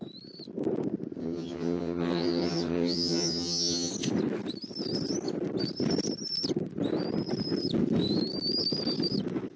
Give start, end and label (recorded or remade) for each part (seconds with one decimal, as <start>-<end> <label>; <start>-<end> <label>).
0.0-1.2 recorded; 1.2-3.9 remade; 3.9-9.6 recorded